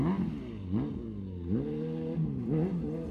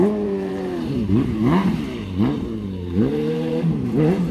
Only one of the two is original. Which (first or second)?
first